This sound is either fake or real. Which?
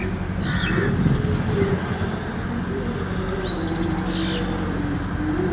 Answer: real